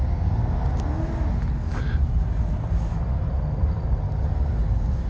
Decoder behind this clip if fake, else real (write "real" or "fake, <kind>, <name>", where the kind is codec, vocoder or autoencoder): real